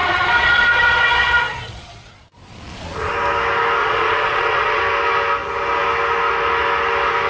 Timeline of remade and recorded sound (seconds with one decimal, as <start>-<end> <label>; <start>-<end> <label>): 0.0-3.1 remade; 3.1-3.8 recorded; 3.8-4.8 remade; 4.8-7.3 recorded